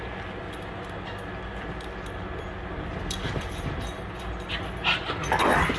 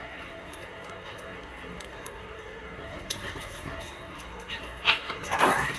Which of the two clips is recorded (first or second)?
first